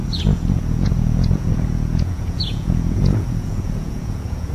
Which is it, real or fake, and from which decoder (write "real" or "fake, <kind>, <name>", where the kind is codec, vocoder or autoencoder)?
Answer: fake, vocoder, Vocos